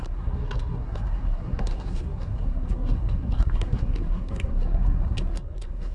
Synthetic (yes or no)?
yes